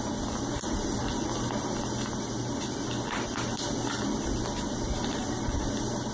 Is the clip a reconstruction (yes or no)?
no